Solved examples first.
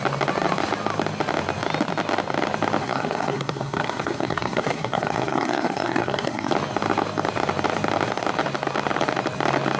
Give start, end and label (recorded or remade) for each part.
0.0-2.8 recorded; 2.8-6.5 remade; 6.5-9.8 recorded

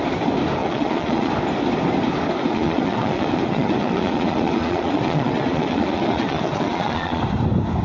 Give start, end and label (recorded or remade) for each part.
0.0-0.6 recorded; 0.6-1.3 remade; 1.3-2.5 recorded; 2.5-7.2 remade; 7.2-7.8 recorded

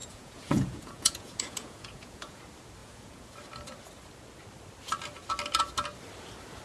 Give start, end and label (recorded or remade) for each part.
0.0-2.4 remade; 2.4-2.8 recorded; 2.8-3.3 remade; 3.3-6.6 recorded

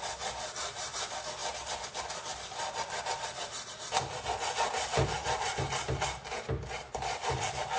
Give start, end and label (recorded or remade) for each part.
0.0-7.8 recorded

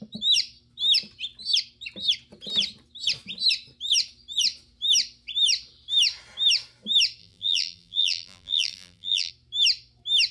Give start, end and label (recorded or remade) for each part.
0.0-7.2 recorded; 7.2-9.3 remade; 9.3-10.3 recorded

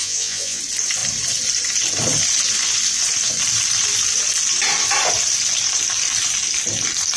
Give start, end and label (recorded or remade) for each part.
0.0-0.6 remade; 0.6-7.2 recorded

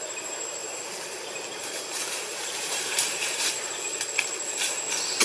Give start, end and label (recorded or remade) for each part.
0.0-0.6 recorded; 0.6-3.7 remade; 3.7-5.2 recorded

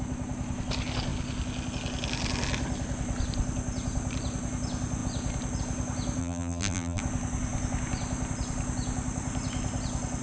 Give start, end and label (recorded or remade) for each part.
0.0-6.2 recorded; 6.2-7.0 remade; 7.0-10.2 recorded